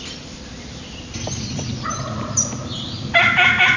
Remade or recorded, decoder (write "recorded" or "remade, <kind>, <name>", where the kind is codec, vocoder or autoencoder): recorded